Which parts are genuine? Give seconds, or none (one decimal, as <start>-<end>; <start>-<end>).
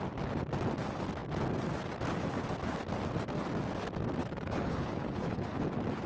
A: 0.0-4.2; 5.6-6.1